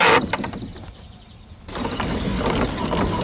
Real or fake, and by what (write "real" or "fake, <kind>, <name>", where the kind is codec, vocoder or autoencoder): real